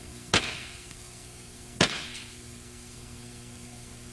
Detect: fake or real fake